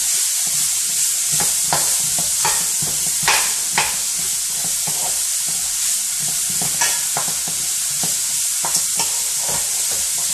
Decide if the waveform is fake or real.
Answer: real